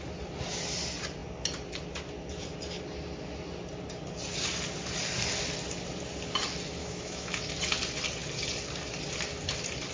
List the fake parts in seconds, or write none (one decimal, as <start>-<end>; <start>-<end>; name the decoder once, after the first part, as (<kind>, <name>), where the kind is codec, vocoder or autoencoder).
6.8-7.4 (autoencoder, DAC-VAE)